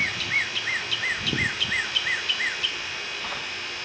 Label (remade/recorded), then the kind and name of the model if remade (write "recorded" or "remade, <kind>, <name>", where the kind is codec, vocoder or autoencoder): recorded